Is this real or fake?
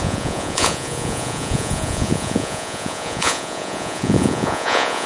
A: fake